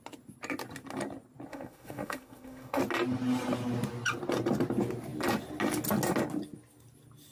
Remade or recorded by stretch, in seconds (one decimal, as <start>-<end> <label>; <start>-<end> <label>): 0.0-1.5 recorded; 1.5-2.8 remade; 2.8-7.3 recorded

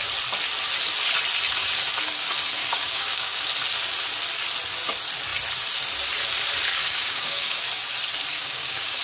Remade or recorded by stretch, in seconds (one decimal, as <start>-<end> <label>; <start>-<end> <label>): 0.0-2.6 recorded; 2.6-3.4 remade; 3.4-6.7 recorded; 6.7-7.6 remade; 7.6-8.3 recorded; 8.3-9.0 remade

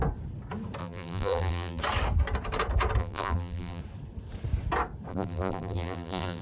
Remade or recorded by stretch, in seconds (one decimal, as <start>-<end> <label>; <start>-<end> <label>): 0.0-0.8 recorded; 0.8-1.8 remade; 1.8-3.0 recorded; 3.0-3.8 remade; 3.8-5.1 recorded; 5.1-6.4 remade

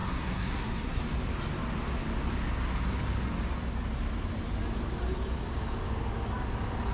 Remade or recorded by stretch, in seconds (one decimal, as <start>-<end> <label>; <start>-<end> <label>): 0.0-1.0 remade; 1.0-6.9 recorded

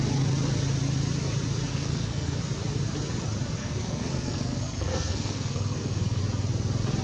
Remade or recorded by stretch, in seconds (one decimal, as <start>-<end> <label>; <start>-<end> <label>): 0.0-1.7 recorded; 1.7-2.4 remade; 2.4-3.6 recorded; 3.6-6.2 remade; 6.2-7.0 recorded

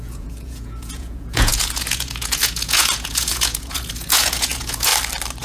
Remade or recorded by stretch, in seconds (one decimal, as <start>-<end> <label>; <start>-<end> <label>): 0.0-4.9 remade; 4.9-5.4 recorded

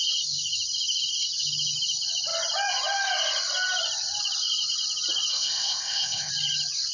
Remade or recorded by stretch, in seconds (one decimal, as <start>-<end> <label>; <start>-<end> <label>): 0.0-5.3 recorded; 5.3-6.3 remade; 6.3-6.9 recorded